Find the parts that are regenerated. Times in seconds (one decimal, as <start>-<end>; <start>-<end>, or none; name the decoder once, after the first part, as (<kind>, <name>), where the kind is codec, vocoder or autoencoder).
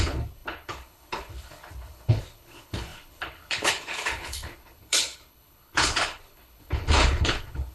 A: 0.0-7.7 (codec, HILCodec)